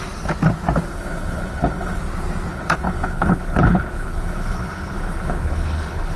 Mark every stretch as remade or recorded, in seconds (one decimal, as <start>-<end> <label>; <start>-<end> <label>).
0.0-0.9 recorded; 0.9-2.0 remade; 2.0-2.5 recorded; 2.5-6.2 remade